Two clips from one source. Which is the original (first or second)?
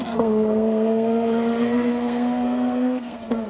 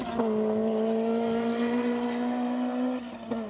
second